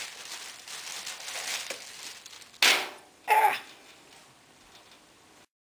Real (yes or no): yes